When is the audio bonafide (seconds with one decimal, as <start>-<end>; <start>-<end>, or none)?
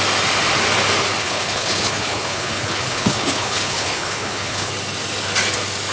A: 0.0-1.2; 4.7-5.9